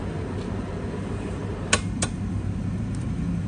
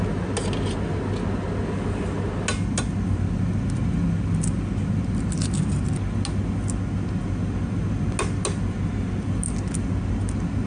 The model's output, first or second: first